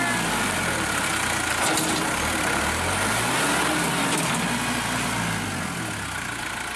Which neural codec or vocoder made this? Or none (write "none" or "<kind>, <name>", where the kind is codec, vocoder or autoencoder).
none